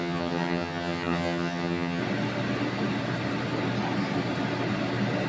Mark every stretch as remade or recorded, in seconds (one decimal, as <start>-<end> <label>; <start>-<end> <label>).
0.0-2.0 remade; 2.0-5.3 recorded